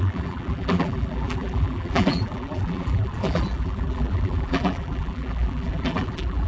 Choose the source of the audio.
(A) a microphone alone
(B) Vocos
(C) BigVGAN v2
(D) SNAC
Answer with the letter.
C